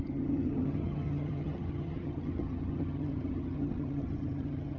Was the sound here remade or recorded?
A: remade